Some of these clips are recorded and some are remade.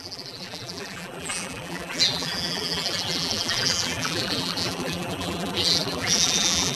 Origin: remade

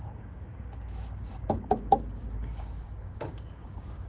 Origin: remade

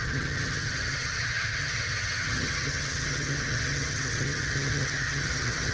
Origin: remade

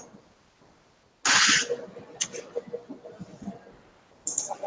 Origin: recorded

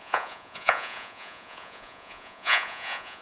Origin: remade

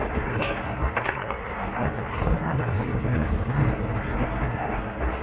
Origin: remade